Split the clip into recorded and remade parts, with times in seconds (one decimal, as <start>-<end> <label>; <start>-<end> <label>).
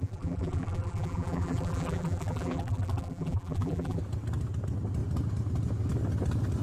0.0-4.0 remade; 4.0-6.6 recorded